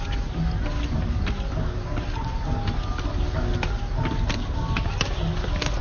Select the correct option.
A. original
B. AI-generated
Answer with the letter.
A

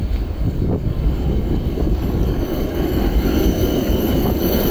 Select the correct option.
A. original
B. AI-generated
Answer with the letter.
B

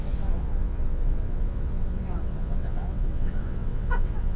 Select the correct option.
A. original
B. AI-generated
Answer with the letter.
B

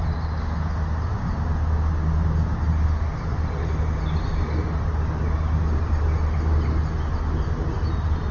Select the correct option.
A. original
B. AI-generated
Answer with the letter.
A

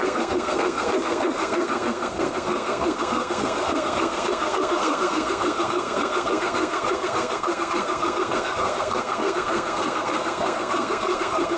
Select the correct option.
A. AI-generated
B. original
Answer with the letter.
A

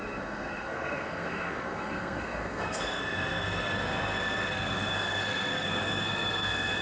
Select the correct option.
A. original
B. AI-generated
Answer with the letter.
B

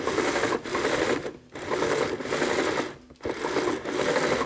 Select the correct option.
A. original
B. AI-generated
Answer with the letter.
A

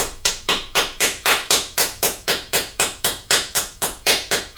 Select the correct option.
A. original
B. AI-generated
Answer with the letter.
B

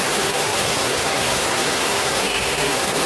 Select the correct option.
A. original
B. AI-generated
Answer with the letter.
B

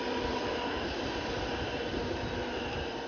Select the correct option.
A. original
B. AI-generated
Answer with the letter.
A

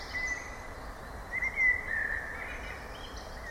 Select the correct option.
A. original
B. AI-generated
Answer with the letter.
A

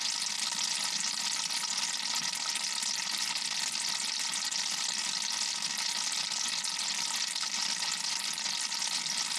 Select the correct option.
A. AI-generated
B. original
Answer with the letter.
B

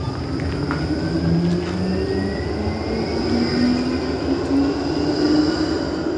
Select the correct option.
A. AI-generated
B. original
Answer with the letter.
B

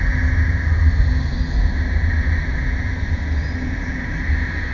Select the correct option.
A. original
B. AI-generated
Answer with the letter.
A